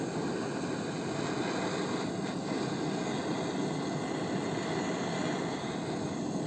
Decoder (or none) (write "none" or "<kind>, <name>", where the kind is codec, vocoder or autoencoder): none